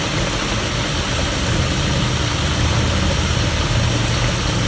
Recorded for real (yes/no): yes